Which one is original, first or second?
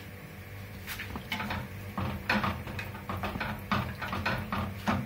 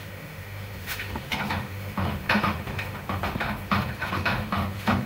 first